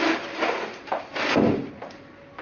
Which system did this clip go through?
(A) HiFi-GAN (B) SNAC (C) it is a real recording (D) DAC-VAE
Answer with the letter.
C